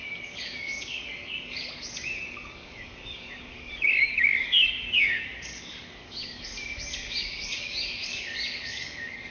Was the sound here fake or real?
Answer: fake